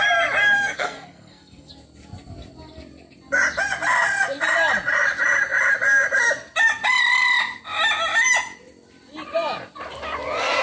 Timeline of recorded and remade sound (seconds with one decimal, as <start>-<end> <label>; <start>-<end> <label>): 0.0-0.4 recorded; 0.4-1.7 remade; 1.7-10.6 recorded